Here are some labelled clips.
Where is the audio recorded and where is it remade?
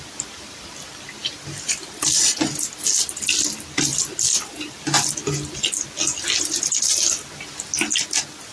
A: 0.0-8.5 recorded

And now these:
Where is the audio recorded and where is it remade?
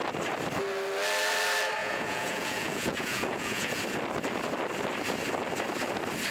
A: 0.0-1.8 recorded; 1.8-3.8 remade; 3.8-6.3 recorded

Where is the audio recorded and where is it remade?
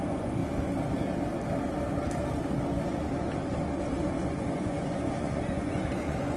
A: 0.0-0.4 remade; 0.4-4.2 recorded; 4.2-6.4 remade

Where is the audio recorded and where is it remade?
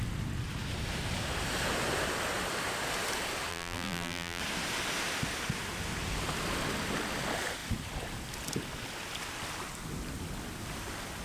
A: 0.0-3.5 recorded; 3.5-4.4 remade; 4.4-11.2 recorded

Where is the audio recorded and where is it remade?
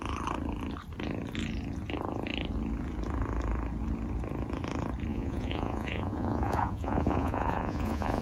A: 0.0-5.1 recorded; 5.1-8.2 remade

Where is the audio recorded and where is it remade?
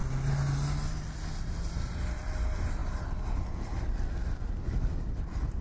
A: 0.0-5.6 recorded